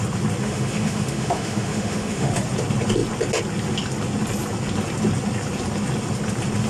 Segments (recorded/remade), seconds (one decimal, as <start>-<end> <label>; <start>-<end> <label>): 0.0-0.4 recorded; 0.4-2.3 remade; 2.3-6.7 recorded